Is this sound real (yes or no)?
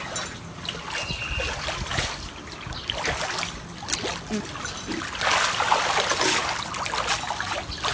yes